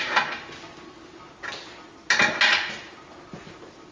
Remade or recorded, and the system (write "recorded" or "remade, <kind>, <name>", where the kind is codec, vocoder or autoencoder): recorded